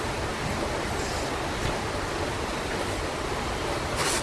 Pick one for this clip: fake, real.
real